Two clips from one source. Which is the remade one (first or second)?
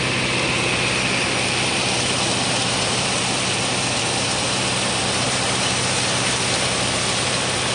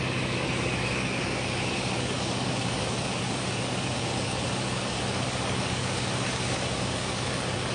second